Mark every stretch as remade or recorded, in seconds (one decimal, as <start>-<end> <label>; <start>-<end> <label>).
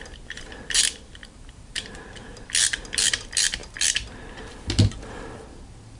0.0-1.2 recorded; 1.2-2.0 remade; 2.0-6.0 recorded